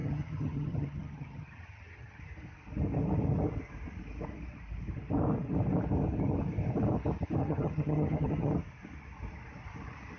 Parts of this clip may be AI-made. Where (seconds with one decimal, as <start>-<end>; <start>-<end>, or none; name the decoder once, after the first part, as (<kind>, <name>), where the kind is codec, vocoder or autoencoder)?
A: 0.0-2.2 (vocoder, HiFi-GAN); 7.4-8.5